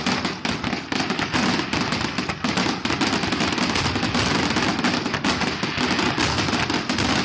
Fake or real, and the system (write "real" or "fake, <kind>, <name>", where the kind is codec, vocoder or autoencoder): real